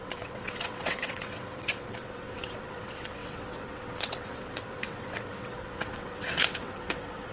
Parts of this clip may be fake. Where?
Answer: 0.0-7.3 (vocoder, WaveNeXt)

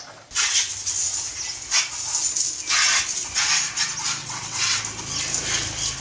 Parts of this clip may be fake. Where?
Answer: 4.2-4.8 (vocoder, WaveNeXt)

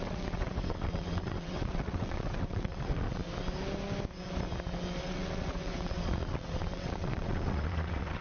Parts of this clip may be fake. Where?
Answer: 0.0-3.2 (vocoder, WaveNeXt); 5.0-8.2

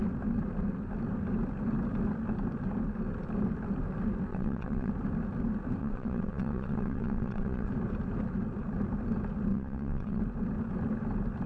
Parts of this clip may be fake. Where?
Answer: 4.3-4.9 (vocoder, WaveNeXt); 5.8-7.7; 9.5-10.2

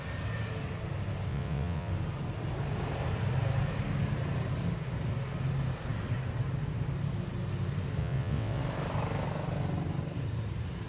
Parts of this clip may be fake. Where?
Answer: 1.3-1.9 (vocoder, WaveNeXt); 8.0-8.6

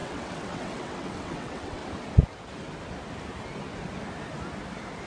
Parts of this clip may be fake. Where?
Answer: 0.0-1.8 (vocoder, WaveNeXt)

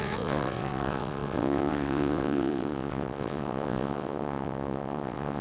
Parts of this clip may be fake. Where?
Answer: 0.0-5.4 (vocoder, WaveNeXt)

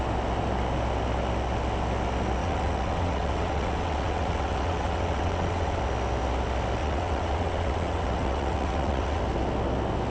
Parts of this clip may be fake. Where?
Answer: 2.4-5.8 (vocoder, WaveNeXt); 6.8-9.2